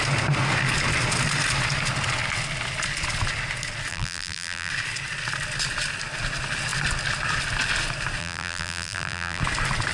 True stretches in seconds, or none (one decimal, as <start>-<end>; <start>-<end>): 0.0-3.9; 4.7-8.2; 9.4-9.9